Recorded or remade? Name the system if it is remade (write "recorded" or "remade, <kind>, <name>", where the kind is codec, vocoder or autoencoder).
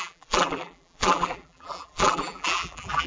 remade, vocoder, BigVGAN v2